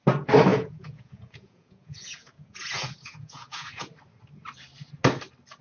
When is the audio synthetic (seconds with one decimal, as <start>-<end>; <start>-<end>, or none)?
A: 0.5-3.9